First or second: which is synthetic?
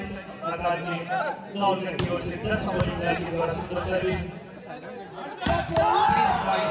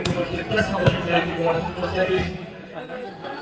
second